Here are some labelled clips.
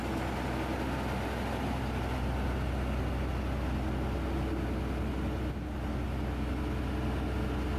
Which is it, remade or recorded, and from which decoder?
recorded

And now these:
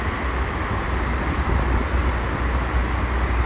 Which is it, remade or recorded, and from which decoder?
recorded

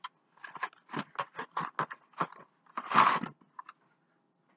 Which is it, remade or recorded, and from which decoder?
recorded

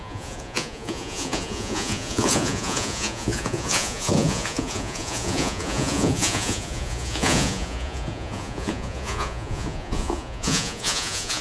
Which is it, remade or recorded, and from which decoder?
remade, vocoder, Vocos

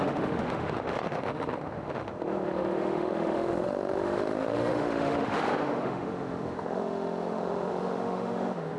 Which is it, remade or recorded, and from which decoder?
remade, autoencoder, DAC-VAE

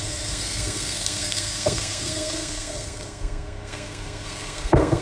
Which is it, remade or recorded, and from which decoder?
remade, codec, SNAC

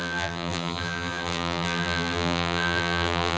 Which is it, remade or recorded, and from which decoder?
remade, vocoder, BigVGAN v2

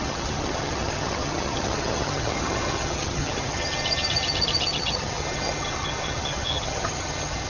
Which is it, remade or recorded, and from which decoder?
remade, vocoder, HiFi-GAN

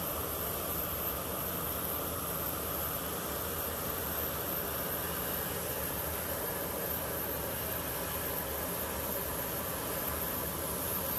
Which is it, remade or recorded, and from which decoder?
recorded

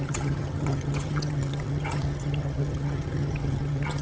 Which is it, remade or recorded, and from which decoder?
remade, vocoder, HiFi-GAN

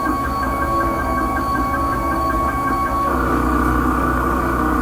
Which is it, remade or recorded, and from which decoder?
remade, codec, DAC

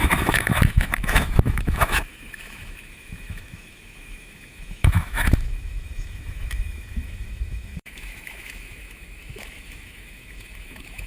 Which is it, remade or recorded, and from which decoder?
remade, autoencoder, DAC-VAE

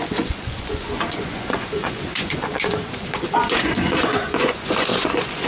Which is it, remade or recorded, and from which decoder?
remade, vocoder, Vocos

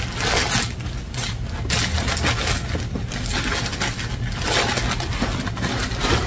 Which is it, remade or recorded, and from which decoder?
recorded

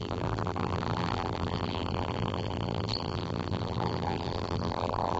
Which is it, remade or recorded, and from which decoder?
remade, vocoder, BigVGAN v2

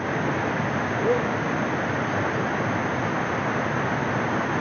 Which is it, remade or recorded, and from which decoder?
recorded